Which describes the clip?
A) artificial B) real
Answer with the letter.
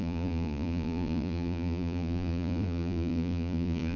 A